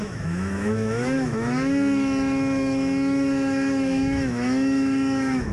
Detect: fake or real fake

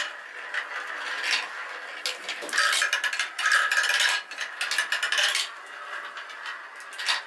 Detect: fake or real real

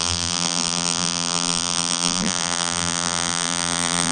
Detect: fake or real fake